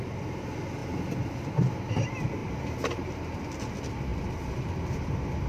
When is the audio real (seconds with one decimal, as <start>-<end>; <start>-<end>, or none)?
0.0-0.8; 1.7-5.5